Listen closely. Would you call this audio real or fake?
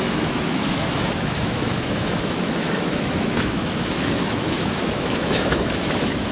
fake